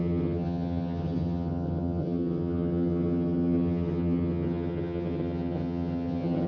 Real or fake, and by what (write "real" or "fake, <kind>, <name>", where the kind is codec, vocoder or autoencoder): fake, vocoder, HiFi-GAN